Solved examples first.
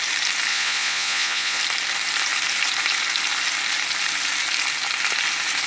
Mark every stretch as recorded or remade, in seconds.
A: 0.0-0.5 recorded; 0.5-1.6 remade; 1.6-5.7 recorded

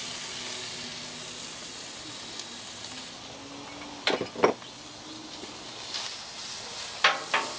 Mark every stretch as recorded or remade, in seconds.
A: 0.0-7.6 recorded